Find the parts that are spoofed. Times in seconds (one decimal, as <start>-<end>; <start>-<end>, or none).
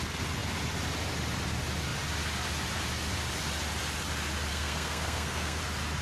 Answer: 4.5-5.6